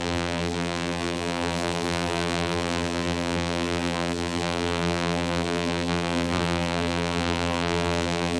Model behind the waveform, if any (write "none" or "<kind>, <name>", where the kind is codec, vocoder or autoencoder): vocoder, BigVGAN v2